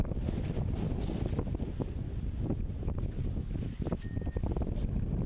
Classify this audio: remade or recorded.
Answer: recorded